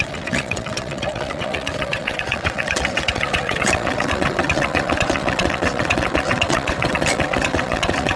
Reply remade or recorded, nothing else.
remade